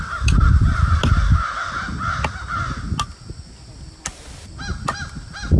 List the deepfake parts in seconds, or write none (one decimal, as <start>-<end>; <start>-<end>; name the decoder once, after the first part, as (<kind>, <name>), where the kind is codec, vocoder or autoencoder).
0.0-1.0 (vocoder, BigVGAN v2); 4.4-5.6